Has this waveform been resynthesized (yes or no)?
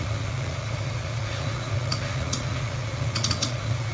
yes